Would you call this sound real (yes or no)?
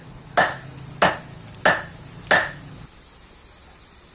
yes